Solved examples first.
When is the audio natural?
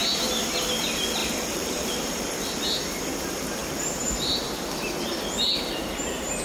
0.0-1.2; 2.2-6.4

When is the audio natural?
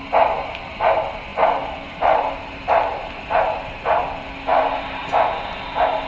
0.0-1.3; 4.0-4.5; 5.0-6.1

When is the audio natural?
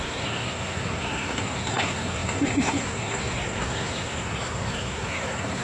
none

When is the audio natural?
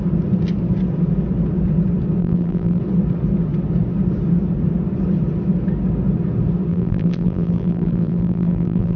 0.0-2.2; 2.8-6.7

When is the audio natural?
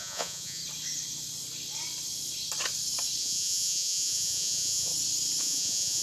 0.6-3.2; 4.9-5.4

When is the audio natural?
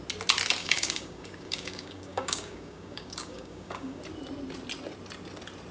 0.0-0.6; 4.0-5.7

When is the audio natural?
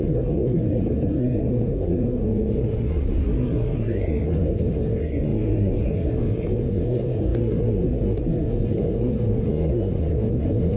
none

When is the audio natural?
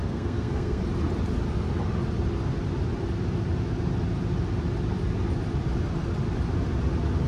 0.8-7.3